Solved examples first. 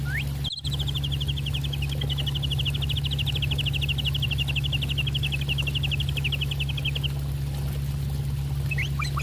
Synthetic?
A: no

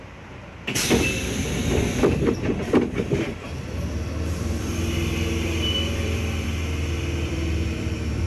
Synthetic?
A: yes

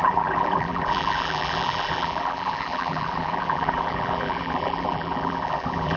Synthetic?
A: yes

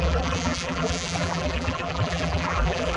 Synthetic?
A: yes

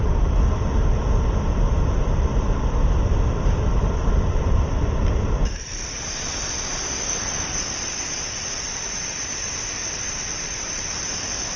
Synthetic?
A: yes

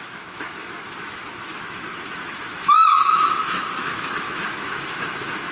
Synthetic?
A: yes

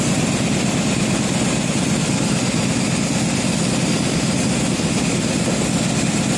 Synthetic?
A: no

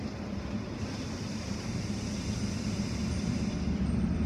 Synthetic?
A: no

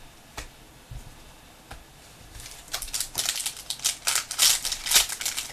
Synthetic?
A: no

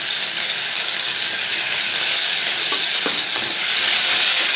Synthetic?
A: yes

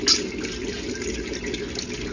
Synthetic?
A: no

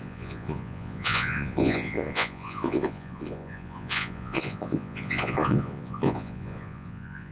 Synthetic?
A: yes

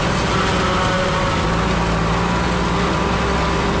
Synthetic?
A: no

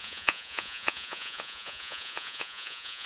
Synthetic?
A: yes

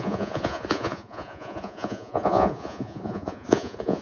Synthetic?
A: yes